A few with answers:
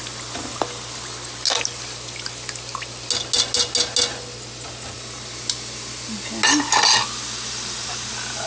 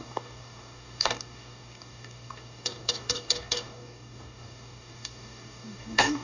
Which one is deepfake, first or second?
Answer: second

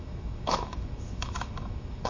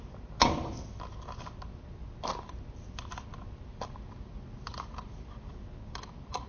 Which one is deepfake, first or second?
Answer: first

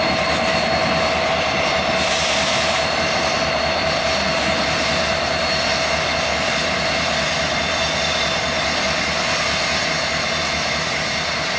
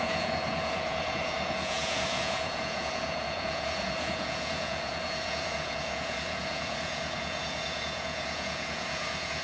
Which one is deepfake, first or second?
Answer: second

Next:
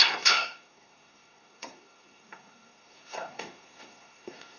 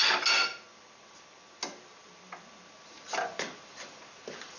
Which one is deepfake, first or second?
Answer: first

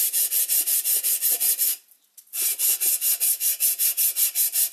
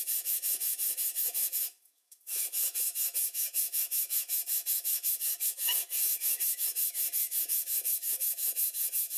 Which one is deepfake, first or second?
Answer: second